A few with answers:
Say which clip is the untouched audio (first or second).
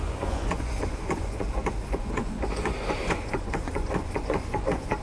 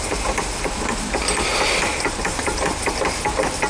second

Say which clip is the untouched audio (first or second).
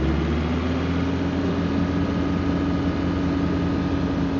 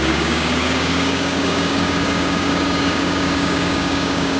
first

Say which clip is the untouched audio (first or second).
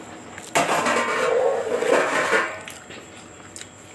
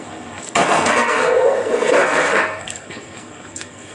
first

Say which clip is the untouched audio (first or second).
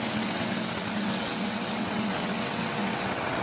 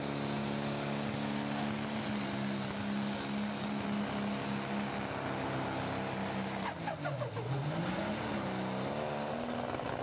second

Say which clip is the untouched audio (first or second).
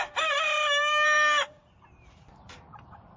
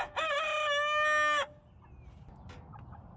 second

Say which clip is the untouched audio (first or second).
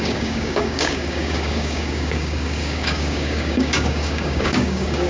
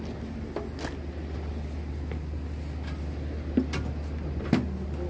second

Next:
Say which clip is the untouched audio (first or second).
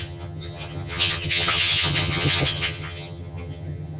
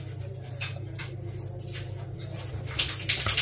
second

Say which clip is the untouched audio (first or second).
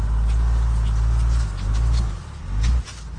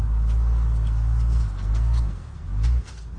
first